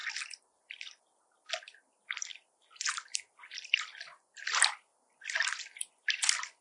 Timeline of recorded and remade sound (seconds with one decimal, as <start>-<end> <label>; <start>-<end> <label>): 0.0-1.5 recorded; 1.5-3.5 remade; 3.5-4.4 recorded; 4.4-4.9 remade; 4.9-5.6 recorded; 5.6-6.6 remade